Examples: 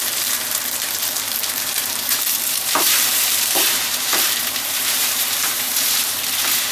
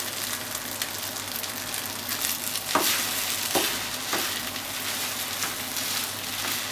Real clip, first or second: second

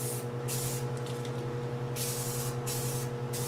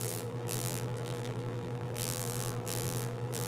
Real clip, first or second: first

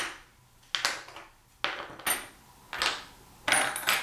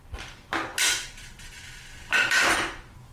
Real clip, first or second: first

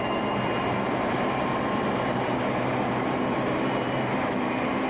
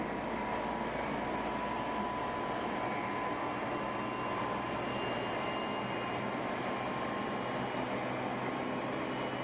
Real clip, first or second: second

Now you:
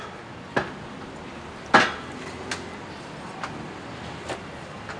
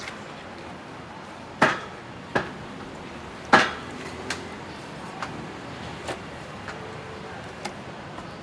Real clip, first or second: first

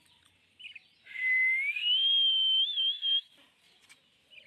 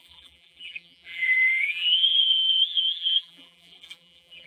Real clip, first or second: first